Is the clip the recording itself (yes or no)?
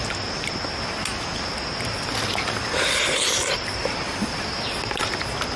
yes